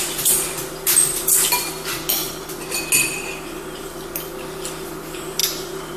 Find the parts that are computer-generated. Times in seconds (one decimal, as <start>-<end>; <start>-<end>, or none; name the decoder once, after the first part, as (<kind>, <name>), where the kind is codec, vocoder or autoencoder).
none